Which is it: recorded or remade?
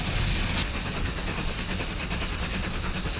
recorded